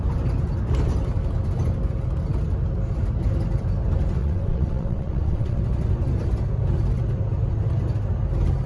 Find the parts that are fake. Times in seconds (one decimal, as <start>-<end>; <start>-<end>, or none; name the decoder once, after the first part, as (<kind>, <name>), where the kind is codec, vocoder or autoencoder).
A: 4.2-5.6 (vocoder, WaveNeXt)